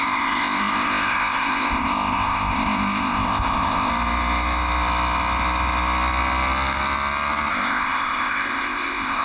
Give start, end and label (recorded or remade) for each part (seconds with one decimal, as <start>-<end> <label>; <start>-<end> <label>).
0.0-3.9 remade; 3.9-7.5 recorded; 7.5-9.2 remade